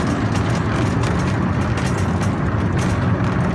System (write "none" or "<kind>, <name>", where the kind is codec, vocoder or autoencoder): none